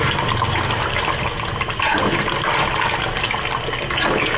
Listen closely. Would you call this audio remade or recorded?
recorded